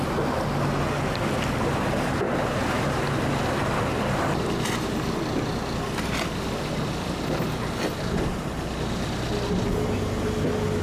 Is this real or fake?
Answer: real